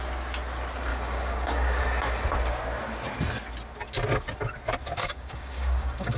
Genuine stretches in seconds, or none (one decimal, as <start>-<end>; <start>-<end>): 0.0-0.9; 1.8-5.0